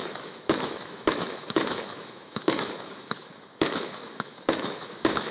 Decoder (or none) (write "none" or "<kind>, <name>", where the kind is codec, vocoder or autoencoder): autoencoder, DAC-VAE